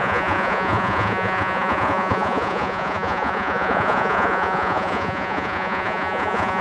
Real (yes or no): no